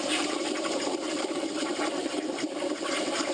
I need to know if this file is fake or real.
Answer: fake